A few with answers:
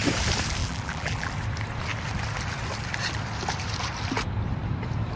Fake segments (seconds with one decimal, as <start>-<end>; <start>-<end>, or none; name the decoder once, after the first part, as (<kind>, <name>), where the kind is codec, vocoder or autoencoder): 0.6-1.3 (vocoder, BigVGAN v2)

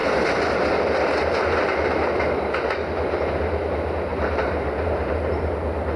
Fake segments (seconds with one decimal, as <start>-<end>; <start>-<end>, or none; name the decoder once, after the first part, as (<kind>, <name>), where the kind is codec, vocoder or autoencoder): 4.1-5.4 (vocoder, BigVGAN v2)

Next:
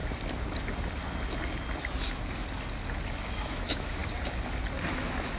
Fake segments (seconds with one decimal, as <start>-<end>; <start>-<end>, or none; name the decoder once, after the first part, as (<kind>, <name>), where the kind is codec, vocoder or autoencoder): 3.2-4.0 (autoencoder, DAC-VAE); 4.9-5.4